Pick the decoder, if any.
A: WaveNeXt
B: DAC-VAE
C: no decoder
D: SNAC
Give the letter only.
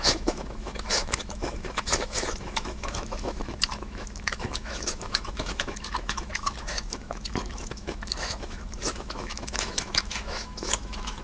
B